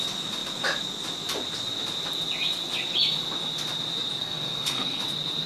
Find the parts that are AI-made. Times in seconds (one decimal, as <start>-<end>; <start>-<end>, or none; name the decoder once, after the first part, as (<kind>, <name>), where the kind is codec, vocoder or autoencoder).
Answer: 4.2-5.0 (codec, SNAC)